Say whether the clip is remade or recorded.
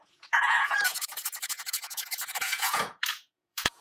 remade